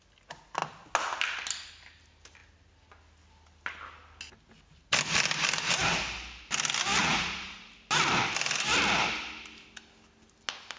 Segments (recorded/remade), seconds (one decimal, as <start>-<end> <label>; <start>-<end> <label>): 0.0-7.0 recorded; 7.0-7.6 remade; 7.6-10.8 recorded